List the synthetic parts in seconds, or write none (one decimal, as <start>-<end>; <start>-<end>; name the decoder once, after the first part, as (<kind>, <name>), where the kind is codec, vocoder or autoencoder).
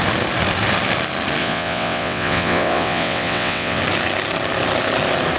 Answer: 1.4-3.8 (vocoder, WaveNeXt)